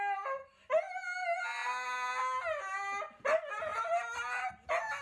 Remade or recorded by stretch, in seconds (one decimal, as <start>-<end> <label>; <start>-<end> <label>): 0.0-3.7 recorded; 3.7-4.5 remade; 4.5-5.0 recorded